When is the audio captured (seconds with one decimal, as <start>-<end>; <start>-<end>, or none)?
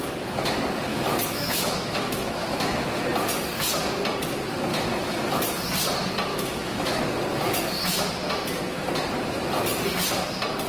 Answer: 0.0-0.9; 3.0-4.7; 5.4-6.3; 7.0-10.7